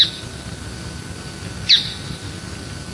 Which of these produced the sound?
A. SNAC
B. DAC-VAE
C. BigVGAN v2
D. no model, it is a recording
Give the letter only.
D